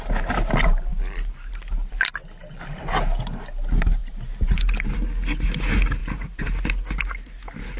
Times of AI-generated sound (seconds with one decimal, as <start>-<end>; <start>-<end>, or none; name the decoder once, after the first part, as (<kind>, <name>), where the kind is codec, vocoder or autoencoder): none

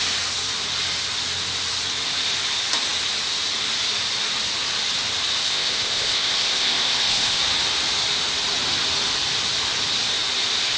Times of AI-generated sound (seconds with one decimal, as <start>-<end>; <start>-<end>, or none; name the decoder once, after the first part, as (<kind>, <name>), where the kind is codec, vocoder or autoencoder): 5.4-7.4 (codec, ZipCodec)

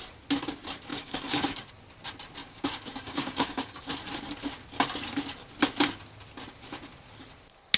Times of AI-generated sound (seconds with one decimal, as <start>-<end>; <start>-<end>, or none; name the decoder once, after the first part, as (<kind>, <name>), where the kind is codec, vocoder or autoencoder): 0.9-1.7 (codec, DAC); 2.4-3.9

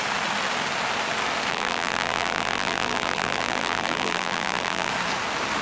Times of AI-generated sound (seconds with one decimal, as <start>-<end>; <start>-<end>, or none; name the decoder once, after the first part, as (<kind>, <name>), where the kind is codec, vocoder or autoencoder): 1.5-4.9 (vocoder, BigVGAN v2)